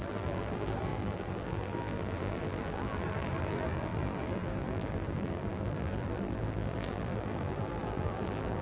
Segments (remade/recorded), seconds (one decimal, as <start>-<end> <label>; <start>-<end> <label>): 0.0-8.6 remade